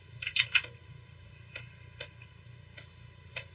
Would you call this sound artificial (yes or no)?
no